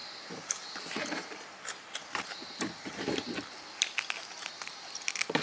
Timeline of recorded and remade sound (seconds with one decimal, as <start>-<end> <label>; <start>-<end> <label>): 0.0-3.2 remade; 3.2-5.4 recorded